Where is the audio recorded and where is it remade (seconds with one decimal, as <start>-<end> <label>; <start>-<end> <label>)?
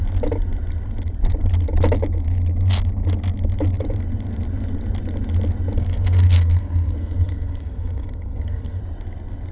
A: 0.0-5.8 recorded; 5.8-8.8 remade; 8.8-9.5 recorded